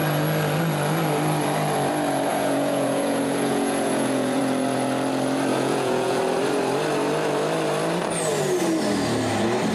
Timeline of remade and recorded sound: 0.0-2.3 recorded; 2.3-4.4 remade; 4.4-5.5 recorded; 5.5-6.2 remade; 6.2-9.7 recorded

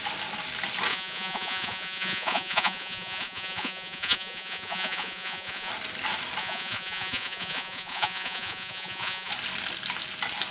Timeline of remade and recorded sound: 0.0-0.9 recorded; 0.9-5.7 remade; 5.7-6.4 recorded; 6.4-9.3 remade; 9.3-10.5 recorded

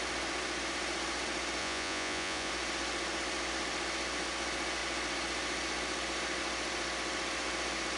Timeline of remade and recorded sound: 0.0-1.6 recorded; 1.6-2.5 remade; 2.5-8.0 recorded

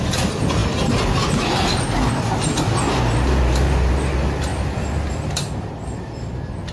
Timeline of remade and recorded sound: 0.0-6.7 recorded

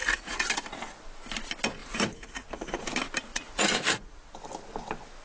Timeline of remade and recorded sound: 0.0-0.5 remade; 0.5-1.8 recorded; 1.8-2.8 remade; 2.8-3.3 recorded; 3.3-4.3 remade; 4.3-5.2 recorded

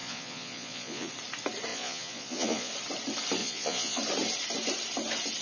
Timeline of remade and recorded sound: 0.0-1.1 remade; 1.1-1.7 recorded; 1.7-2.7 remade; 2.7-3.4 recorded; 3.4-4.0 remade; 4.0-5.4 recorded

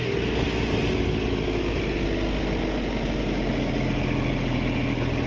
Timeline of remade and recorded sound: 0.0-5.3 recorded

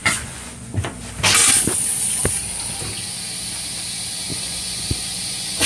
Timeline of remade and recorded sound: 0.0-1.0 remade; 1.0-4.3 recorded; 4.3-5.7 remade